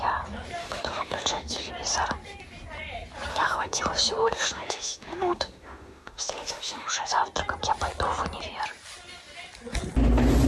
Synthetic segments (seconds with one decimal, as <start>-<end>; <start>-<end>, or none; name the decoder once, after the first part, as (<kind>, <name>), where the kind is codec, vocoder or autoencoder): 0.6-1.7 (autoencoder, DAC-VAE); 3.3-3.8; 4.2-7.1